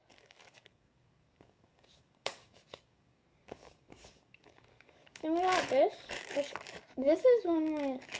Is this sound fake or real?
fake